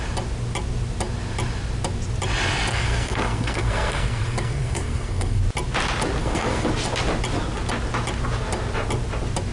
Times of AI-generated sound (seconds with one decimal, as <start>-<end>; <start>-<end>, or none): 2.7-5.4; 6.2-6.7